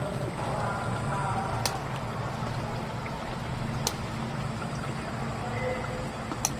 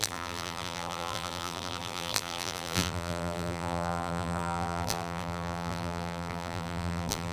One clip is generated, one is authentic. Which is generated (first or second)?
second